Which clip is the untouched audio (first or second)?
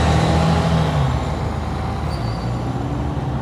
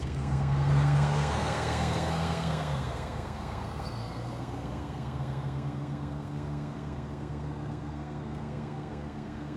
first